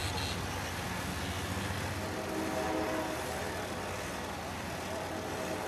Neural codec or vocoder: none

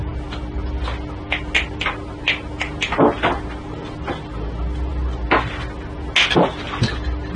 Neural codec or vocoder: none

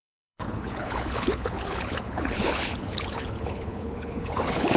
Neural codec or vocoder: codec, HILCodec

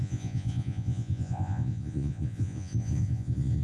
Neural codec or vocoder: vocoder, Vocos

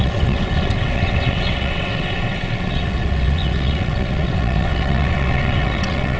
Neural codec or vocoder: vocoder, WaveNeXt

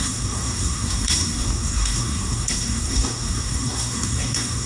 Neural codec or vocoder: codec, SNAC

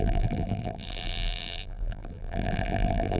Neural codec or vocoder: vocoder, BigVGAN v2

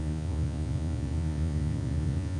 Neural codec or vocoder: vocoder, Vocos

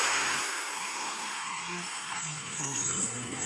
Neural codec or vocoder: codec, SNAC